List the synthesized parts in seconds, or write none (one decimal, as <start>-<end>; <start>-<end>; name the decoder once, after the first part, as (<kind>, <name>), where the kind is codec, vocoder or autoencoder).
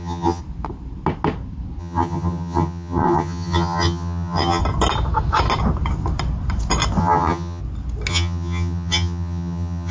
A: 0.0-0.4 (vocoder, HiFi-GAN); 1.8-4.6; 7.0-7.6; 8.1-9.9